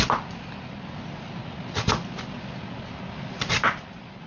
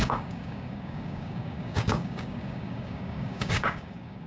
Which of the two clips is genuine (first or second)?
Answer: first